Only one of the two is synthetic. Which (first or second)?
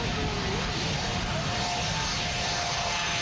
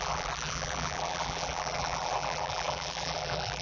second